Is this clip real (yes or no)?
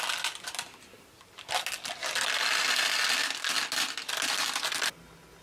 yes